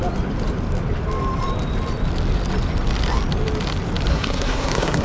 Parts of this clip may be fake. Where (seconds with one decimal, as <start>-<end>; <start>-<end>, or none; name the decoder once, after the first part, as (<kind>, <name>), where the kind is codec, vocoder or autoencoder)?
4.1-5.0 (codec, SNAC)